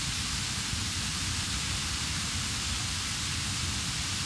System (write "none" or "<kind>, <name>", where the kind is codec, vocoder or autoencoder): vocoder, BigVGAN v2